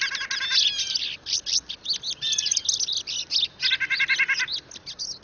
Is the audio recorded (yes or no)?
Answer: yes